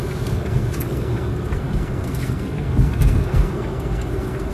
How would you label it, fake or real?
fake